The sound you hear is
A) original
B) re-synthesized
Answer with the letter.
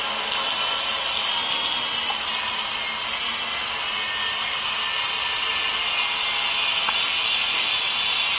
A